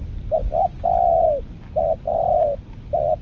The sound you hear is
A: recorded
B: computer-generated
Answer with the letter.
A